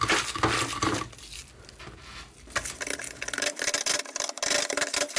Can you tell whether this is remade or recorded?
recorded